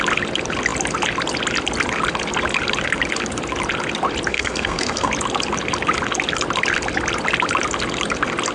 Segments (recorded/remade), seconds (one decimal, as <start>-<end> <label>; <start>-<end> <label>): 0.0-4.3 recorded; 4.3-5.1 remade; 5.1-8.5 recorded